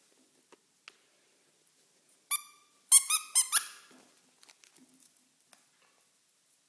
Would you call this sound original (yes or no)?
yes